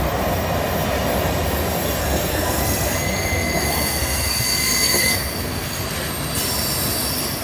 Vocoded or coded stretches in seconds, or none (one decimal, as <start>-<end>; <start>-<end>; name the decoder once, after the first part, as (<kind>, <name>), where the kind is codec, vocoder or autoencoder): 2.0-5.8 (codec, SNAC)

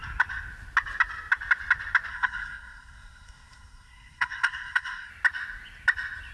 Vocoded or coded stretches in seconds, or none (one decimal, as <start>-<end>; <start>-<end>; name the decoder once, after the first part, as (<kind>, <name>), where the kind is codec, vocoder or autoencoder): 2.1-5.1 (codec, SNAC)

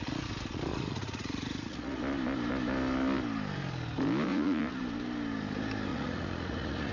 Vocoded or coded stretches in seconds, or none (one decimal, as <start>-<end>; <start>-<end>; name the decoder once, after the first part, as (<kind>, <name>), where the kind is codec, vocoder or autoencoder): 0.7-2.0 (vocoder, Vocos); 4.3-4.8; 5.9-6.9